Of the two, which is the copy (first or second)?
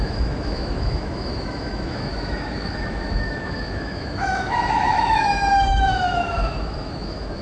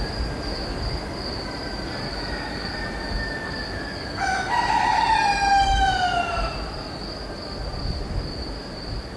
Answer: first